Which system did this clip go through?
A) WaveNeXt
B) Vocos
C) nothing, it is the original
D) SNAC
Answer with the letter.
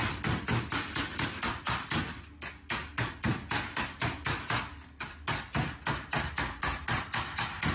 C